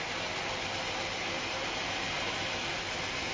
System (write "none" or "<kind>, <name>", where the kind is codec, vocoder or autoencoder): none